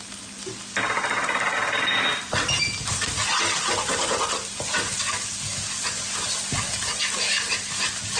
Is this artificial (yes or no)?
no